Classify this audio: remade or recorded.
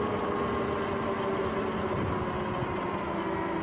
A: recorded